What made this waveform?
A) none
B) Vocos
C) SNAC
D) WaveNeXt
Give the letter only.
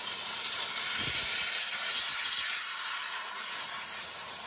A